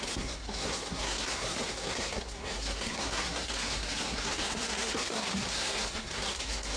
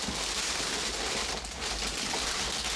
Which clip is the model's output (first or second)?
first